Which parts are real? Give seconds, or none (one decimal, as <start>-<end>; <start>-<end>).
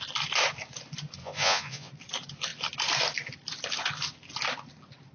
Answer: 0.0-1.2; 1.9-5.1